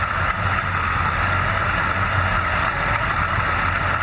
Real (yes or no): yes